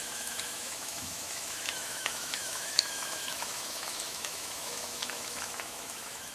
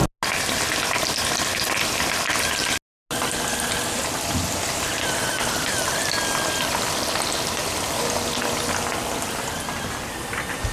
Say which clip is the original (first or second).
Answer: second